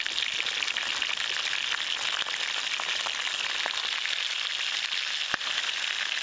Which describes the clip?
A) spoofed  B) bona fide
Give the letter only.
B